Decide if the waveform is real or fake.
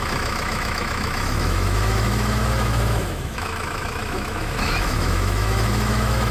fake